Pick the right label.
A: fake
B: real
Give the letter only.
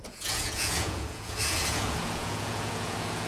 A